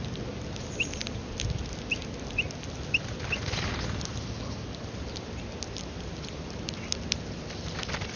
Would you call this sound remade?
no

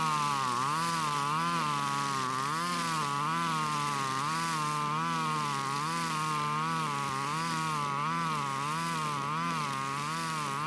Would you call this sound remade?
no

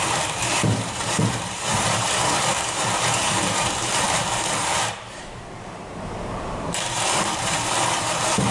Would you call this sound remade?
yes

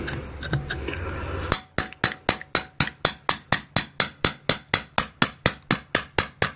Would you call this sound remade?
no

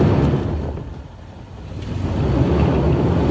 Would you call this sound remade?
no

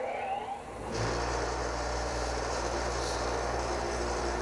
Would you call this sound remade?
yes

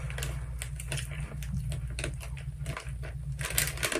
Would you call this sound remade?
no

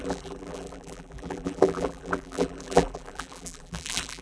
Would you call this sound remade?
yes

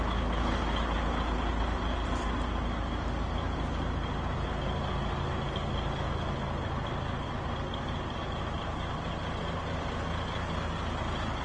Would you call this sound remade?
no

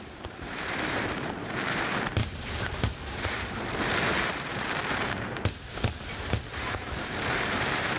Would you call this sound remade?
yes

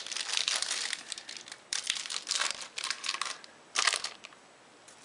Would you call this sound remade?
no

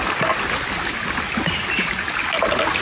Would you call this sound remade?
no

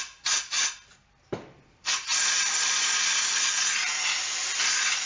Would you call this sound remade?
yes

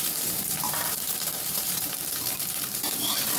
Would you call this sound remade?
yes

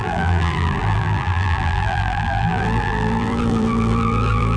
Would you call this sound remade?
yes